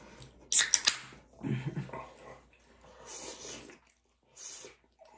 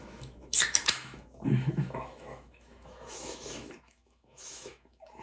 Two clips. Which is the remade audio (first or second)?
second